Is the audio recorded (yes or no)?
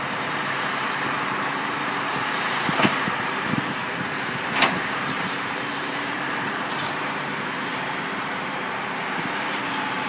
no